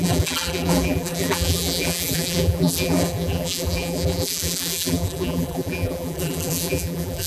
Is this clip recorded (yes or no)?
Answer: no